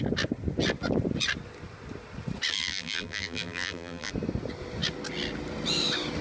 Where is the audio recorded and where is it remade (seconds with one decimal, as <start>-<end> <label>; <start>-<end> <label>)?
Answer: 0.0-2.5 recorded; 2.5-4.1 remade; 4.1-6.2 recorded